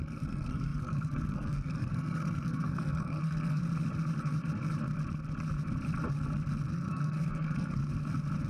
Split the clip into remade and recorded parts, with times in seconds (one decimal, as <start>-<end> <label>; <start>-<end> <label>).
0.0-3.6 remade; 3.6-6.7 recorded; 6.7-7.8 remade; 7.8-8.5 recorded